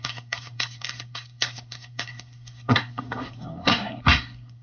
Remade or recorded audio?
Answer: remade